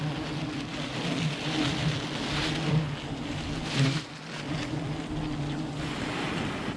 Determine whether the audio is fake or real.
real